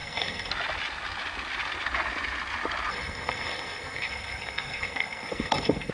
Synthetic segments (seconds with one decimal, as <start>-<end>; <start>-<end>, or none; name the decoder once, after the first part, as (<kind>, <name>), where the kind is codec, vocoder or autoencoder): 0.0-0.5 (codec, SNAC); 2.9-5.9